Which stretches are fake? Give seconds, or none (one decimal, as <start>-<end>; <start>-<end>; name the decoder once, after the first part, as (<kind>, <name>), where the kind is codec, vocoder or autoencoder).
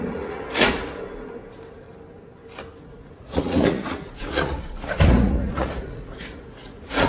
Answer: 0.0-0.7 (vocoder, Vocos); 2.8-7.1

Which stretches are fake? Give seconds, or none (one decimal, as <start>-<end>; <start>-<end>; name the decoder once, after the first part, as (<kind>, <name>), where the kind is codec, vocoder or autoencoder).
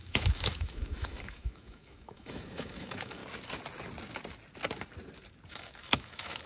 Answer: 0.0-3.2 (autoencoder, DAC-VAE); 5.5-6.5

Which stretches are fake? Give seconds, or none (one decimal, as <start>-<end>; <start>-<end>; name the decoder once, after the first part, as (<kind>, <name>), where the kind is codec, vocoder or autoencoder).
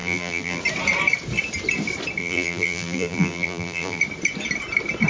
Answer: 0.0-0.6 (vocoder, BigVGAN v2); 2.2-4.0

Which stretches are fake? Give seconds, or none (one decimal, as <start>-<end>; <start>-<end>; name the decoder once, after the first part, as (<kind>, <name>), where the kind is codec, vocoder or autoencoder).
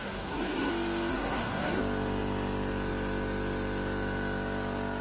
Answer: 0.0-0.7 (codec, SNAC); 1.1-1.8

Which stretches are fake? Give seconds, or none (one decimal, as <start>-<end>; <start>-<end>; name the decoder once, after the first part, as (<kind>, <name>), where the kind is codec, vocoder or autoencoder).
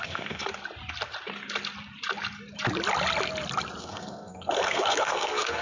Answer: 0.0-0.5 (codec, SNAC); 3.8-5.6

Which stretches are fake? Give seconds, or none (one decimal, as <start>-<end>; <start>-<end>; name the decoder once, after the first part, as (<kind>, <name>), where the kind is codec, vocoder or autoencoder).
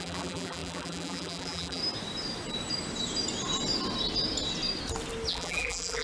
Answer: 0.0-1.8 (vocoder, BigVGAN v2); 5.3-6.0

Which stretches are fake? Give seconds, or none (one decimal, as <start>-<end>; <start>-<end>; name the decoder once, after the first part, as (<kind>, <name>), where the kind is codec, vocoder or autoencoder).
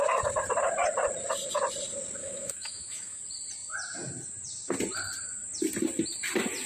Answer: 2.2-3.2 (autoencoder, DAC-VAE)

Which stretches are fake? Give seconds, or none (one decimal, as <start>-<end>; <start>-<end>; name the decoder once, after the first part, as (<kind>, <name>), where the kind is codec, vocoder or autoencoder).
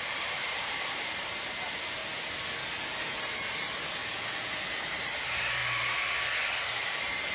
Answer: 0.0-2.0 (vocoder, BigVGAN v2); 3.0-4.0; 4.7-5.6; 6.6-7.3